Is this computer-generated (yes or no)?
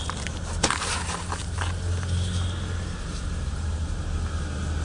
no